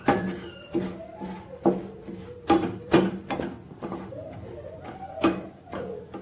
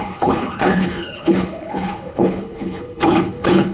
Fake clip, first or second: second